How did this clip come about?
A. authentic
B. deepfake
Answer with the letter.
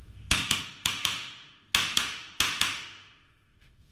B